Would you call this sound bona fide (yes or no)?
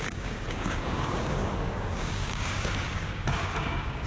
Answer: no